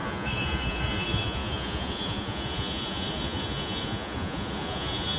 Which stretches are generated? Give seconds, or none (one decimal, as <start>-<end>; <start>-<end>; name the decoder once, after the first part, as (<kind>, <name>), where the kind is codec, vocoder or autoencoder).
0.0-5.2 (vocoder, Vocos)